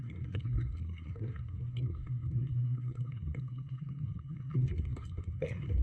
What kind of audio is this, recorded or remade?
remade